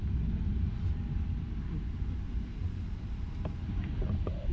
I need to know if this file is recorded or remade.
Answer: recorded